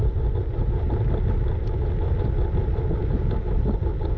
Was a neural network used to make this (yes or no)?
no